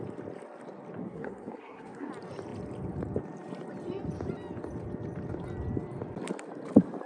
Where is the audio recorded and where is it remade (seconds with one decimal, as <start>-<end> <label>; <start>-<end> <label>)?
0.0-1.0 recorded; 1.0-2.1 remade; 2.1-7.1 recorded